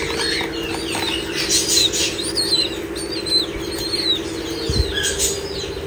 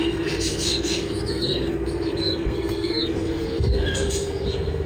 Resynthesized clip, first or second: second